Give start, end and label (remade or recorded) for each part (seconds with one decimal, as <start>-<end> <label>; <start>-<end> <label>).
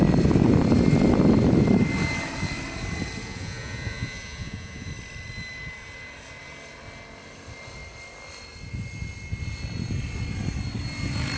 0.0-3.2 recorded; 3.2-4.9 remade; 4.9-11.4 recorded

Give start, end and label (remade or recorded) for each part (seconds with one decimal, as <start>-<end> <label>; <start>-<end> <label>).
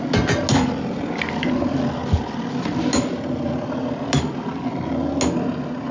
0.0-5.9 recorded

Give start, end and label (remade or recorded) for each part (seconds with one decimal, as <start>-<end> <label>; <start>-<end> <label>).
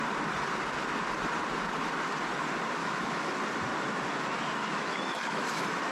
0.0-2.8 recorded; 2.8-3.4 remade; 3.4-4.6 recorded; 4.6-5.9 remade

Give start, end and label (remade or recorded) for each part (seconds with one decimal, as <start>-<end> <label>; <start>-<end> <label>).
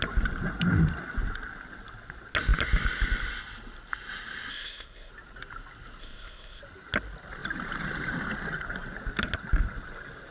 0.0-4.5 recorded; 4.5-5.1 remade; 5.1-6.0 recorded; 6.0-6.6 remade; 6.6-10.3 recorded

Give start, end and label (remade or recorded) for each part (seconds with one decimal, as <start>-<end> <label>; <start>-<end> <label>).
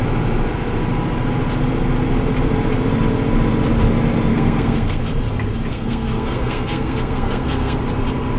0.0-4.3 recorded; 4.3-5.0 remade; 5.0-5.7 recorded; 5.7-7.8 remade; 7.8-8.4 recorded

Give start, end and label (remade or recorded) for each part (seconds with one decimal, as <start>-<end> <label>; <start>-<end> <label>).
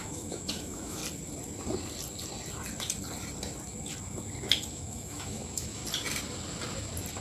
0.0-1.0 remade; 1.0-4.7 recorded; 4.7-5.8 remade; 5.8-7.2 recorded